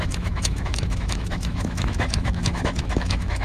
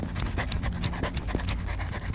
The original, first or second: second